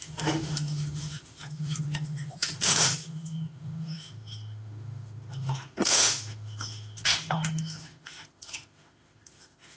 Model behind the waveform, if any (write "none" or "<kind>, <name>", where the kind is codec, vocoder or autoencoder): autoencoder, DAC-VAE